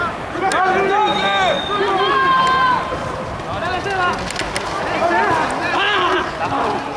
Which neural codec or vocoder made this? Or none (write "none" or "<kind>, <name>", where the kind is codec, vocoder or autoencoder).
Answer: none